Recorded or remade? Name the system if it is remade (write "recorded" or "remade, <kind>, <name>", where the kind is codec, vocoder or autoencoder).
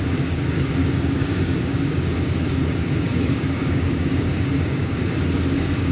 remade, codec, DAC